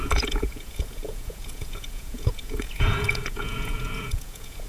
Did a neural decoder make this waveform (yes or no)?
yes